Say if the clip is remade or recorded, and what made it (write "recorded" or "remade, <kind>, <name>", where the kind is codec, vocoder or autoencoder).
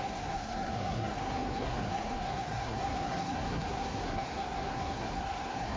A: remade, codec, SNAC